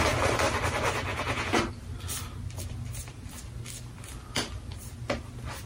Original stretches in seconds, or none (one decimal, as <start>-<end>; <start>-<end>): 0.0-1.1; 1.6-5.7